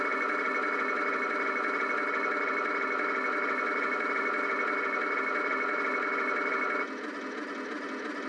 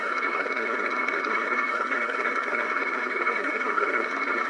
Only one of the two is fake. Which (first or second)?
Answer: second